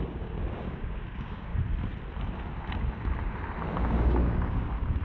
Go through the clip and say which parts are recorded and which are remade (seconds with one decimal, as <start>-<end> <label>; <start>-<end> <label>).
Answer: 0.0-1.5 remade; 1.5-3.8 recorded; 3.8-5.0 remade